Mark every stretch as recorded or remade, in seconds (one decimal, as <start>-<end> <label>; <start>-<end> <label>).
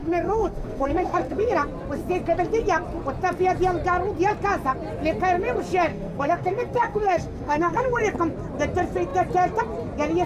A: 0.0-1.5 remade; 1.5-5.9 recorded; 5.9-8.0 remade; 8.0-10.3 recorded